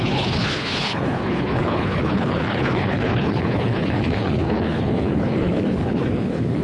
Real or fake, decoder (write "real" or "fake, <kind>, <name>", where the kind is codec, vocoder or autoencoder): fake, codec, HILCodec